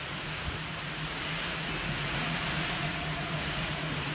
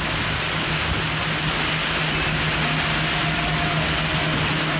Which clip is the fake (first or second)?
first